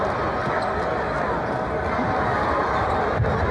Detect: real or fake real